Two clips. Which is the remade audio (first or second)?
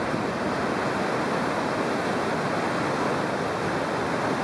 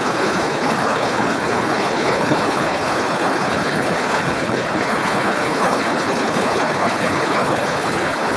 second